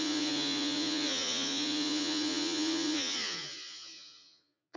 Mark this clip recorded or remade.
remade